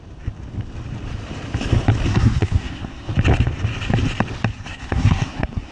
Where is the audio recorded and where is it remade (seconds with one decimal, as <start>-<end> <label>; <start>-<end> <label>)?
0.0-2.1 recorded; 2.1-3.1 remade; 3.1-4.5 recorded; 4.5-5.7 remade